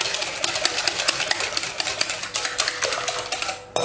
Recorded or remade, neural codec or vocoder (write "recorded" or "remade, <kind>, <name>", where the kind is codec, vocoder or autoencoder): recorded